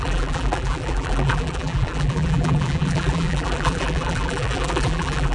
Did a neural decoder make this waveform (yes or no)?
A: yes